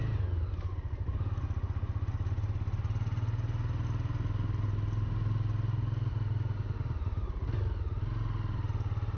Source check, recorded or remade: recorded